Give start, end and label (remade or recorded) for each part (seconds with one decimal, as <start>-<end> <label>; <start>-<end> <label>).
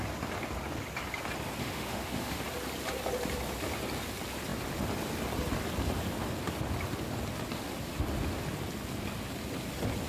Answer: 0.0-1.6 recorded; 1.6-2.4 remade; 2.4-10.1 recorded